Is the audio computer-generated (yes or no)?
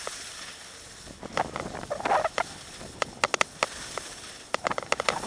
no